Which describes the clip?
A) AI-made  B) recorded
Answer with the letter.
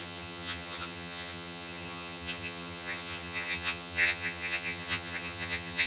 A